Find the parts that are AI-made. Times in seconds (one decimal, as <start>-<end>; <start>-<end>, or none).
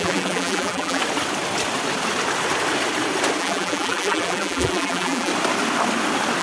0.0-1.0; 3.4-5.3